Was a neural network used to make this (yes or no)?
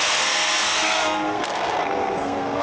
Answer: yes